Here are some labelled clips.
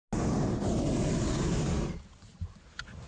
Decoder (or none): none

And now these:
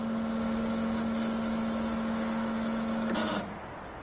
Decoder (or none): none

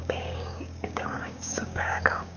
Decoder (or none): codec, DAC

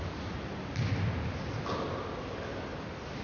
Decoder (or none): none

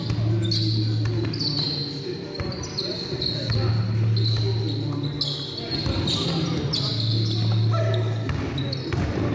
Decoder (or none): none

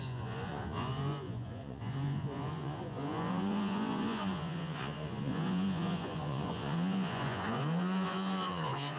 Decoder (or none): vocoder, Vocos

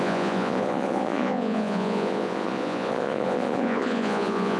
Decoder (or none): vocoder, Vocos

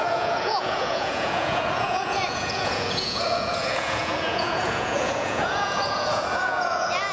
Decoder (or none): vocoder, Vocos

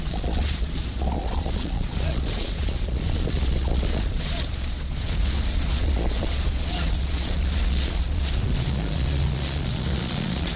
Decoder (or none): vocoder, Vocos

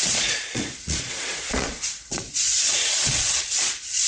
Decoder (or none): vocoder, Vocos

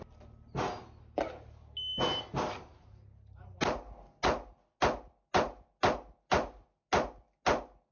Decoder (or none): none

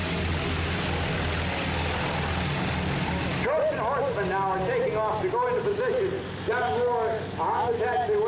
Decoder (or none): none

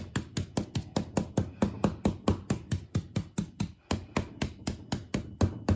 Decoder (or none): none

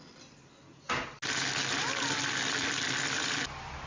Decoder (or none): none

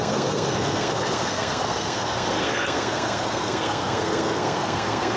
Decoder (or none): codec, SNAC